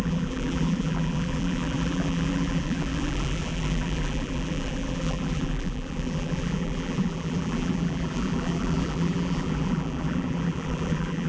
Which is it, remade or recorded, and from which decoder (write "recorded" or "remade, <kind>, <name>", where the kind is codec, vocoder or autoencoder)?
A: remade, vocoder, BigVGAN v2